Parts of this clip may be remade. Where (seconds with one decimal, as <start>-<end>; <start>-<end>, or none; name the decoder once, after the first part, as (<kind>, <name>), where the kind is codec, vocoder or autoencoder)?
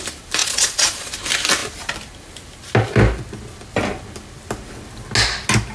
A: 0.4-1.1 (vocoder, Vocos)